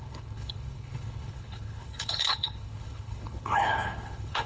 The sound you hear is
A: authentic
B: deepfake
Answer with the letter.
B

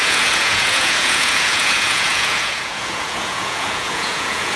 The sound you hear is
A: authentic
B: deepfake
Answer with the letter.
B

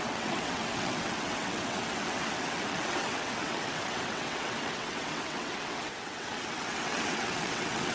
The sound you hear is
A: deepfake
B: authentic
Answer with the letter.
A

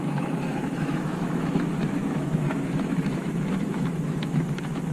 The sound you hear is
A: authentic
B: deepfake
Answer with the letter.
B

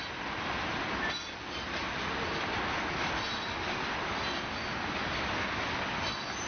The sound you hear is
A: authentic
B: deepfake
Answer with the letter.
A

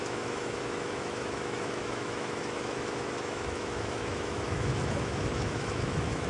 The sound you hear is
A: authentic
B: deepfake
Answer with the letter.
B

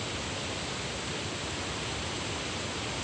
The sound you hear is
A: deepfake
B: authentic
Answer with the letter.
B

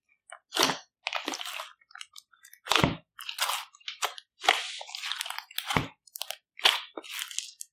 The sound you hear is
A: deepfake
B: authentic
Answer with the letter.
B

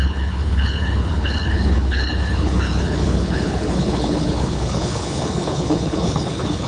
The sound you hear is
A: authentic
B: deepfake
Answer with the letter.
B